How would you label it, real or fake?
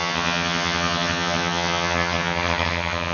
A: fake